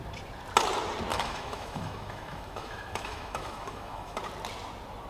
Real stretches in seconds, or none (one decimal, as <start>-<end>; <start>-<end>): 0.0-1.1; 4.2-5.1